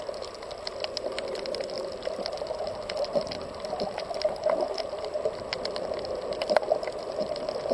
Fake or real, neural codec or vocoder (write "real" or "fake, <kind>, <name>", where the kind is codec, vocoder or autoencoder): real